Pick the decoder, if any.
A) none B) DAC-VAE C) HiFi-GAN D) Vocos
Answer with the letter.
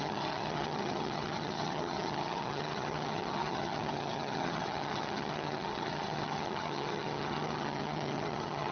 C